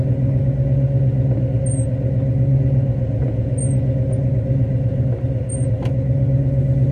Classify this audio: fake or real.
real